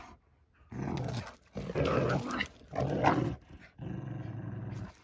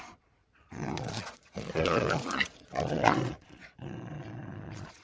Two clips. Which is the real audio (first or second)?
first